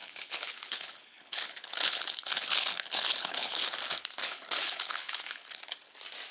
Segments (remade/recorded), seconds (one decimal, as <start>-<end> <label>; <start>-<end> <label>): 0.0-3.8 remade; 3.8-4.2 recorded; 4.2-5.6 remade; 5.6-6.3 recorded